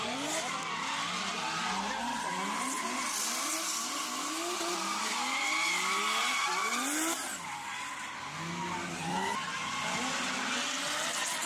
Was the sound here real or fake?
real